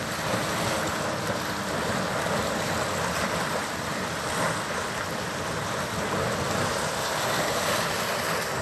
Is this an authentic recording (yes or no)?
yes